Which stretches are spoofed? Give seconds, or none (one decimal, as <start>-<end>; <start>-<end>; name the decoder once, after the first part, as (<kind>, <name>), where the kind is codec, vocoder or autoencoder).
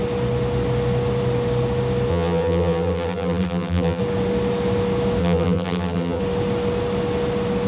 2.1-4.0 (vocoder, BigVGAN v2); 5.2-6.2